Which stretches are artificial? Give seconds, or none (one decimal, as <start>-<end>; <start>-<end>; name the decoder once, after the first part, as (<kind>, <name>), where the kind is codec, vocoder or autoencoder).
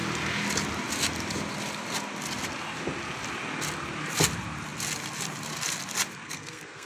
6.2-6.9 (codec, SNAC)